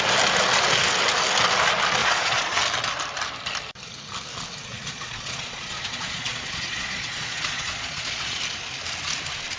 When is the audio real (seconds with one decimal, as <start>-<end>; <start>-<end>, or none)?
0.0-2.0; 2.6-4.7; 8.4-9.6